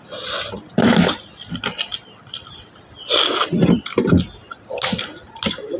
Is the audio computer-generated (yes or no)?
no